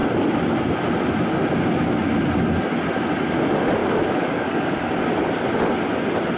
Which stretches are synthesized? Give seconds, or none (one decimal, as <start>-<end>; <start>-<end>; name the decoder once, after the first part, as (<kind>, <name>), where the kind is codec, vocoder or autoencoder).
3.8-4.9 (codec, DAC)